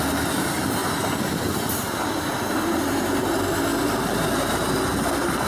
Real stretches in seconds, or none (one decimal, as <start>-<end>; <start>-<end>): 0.0-5.5

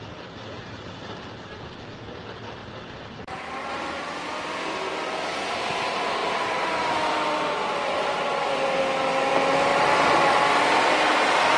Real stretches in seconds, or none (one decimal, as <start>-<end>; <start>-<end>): 0.0-2.6; 4.0-6.2; 8.8-9.7; 10.3-11.6

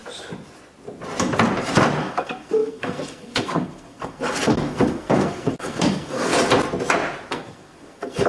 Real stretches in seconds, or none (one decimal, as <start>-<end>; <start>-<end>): 0.0-2.0; 6.3-7.3

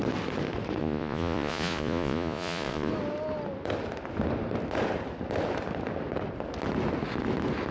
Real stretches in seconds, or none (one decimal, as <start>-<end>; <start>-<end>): 0.0-0.8; 2.9-7.7

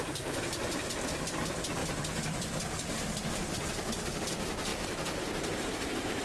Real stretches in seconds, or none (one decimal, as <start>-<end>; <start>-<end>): 0.0-4.7

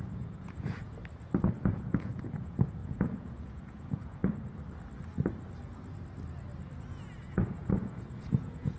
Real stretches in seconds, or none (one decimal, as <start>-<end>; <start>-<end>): 1.0-1.6; 4.2-6.8

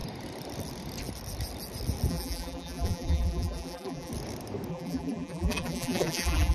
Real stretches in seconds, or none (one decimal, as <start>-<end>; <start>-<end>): 0.0-2.1; 4.1-4.7